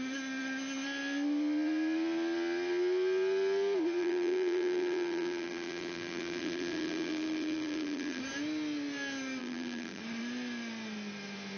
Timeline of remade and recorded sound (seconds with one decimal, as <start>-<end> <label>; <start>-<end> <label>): 0.0-4.0 recorded; 4.0-8.2 remade; 8.2-9.4 recorded; 9.4-10.0 remade; 10.0-11.6 recorded